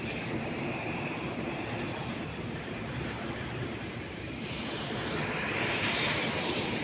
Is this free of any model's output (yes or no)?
no